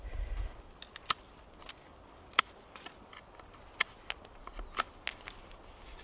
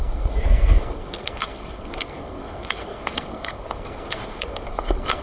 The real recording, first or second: first